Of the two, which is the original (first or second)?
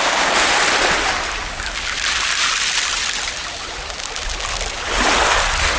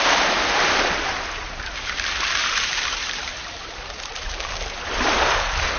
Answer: first